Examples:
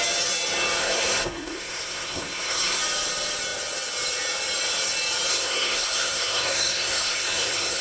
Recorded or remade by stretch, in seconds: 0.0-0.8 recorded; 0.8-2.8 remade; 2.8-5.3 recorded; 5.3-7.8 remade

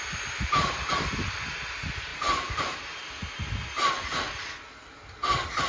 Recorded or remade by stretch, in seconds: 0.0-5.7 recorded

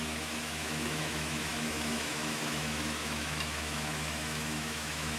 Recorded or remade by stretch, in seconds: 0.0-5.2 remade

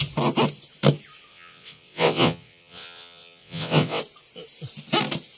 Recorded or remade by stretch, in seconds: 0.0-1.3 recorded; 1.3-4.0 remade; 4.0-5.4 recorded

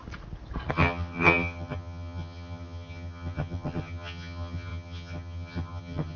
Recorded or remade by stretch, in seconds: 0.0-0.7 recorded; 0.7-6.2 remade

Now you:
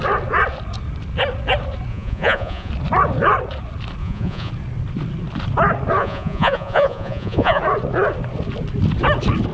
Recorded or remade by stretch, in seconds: 0.0-1.9 recorded; 1.9-2.7 remade; 2.7-4.0 recorded; 4.0-4.5 remade; 4.5-6.0 recorded; 6.0-7.6 remade; 7.6-9.5 recorded